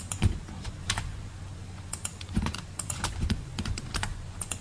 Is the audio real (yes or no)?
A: no